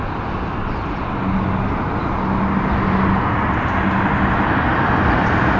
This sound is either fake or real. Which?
real